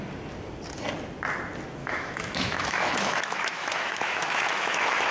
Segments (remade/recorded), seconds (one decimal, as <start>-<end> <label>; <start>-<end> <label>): 0.0-1.8 recorded; 1.8-5.1 remade